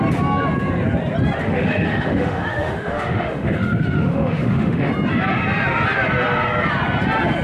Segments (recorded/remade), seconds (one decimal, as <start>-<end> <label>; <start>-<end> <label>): 0.0-1.4 recorded; 1.4-4.9 remade; 4.9-7.4 recorded